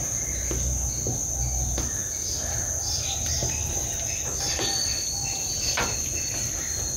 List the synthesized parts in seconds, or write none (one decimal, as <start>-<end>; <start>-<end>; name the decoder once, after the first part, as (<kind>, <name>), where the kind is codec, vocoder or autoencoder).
none